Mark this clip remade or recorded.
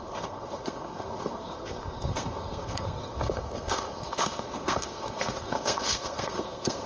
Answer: remade